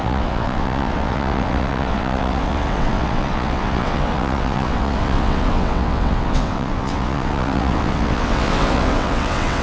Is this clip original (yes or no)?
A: no